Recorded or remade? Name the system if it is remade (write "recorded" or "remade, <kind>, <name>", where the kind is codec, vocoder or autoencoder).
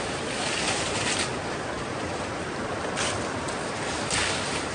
remade, vocoder, BigVGAN v2